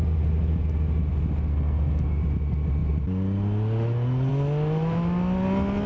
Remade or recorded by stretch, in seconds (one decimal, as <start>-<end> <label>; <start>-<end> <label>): 0.0-1.5 recorded; 1.5-2.2 remade; 2.2-5.9 recorded